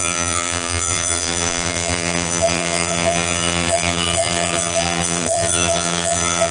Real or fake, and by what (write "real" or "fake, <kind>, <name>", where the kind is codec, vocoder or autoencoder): fake, vocoder, BigVGAN v2